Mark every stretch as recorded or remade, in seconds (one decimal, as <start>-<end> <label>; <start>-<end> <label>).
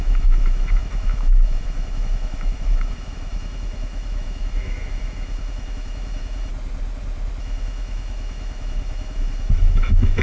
0.0-6.5 remade; 6.5-7.4 recorded; 7.4-10.2 remade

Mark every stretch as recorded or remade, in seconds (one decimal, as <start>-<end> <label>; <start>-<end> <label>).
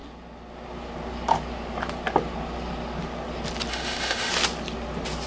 0.0-3.7 recorded; 3.7-4.3 remade; 4.3-5.3 recorded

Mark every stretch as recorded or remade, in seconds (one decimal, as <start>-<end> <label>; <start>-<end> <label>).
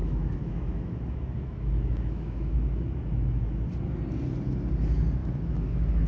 0.0-3.7 remade; 3.7-5.2 recorded; 5.2-6.1 remade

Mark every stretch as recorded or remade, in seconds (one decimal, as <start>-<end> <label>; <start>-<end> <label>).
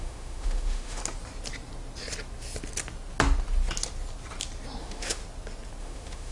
0.0-1.0 remade; 1.0-4.8 recorded; 4.8-5.2 remade; 5.2-5.8 recorded; 5.8-6.3 remade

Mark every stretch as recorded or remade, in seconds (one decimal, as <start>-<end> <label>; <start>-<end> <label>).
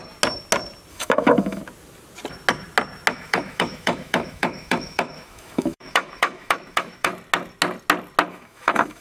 0.0-0.9 recorded; 0.9-1.6 remade; 1.6-3.1 recorded; 3.1-7.1 remade; 7.1-8.3 recorded; 8.3-9.0 remade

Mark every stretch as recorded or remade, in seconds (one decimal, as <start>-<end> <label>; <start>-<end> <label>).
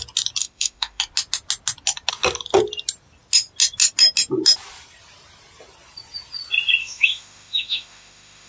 0.0-0.4 recorded; 0.4-1.0 remade; 1.0-6.8 recorded; 6.8-8.5 remade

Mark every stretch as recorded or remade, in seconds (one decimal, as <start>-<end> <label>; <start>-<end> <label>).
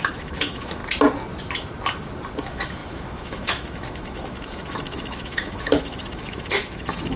0.0-0.8 remade; 0.8-2.4 recorded; 2.4-7.2 remade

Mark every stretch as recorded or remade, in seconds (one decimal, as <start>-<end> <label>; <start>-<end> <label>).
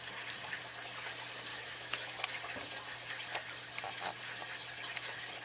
0.0-1.5 recorded; 1.5-2.1 remade; 2.1-5.4 recorded